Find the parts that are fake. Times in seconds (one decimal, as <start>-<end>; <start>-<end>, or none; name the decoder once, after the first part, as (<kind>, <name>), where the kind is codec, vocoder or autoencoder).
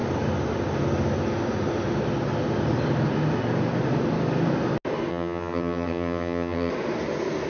5.1-6.7 (vocoder, HiFi-GAN)